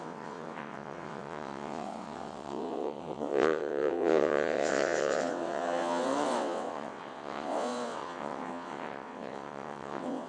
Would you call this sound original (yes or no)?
no